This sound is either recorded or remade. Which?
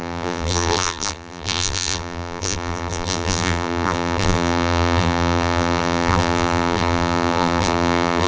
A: remade